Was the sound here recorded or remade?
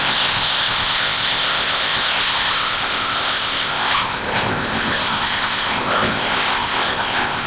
remade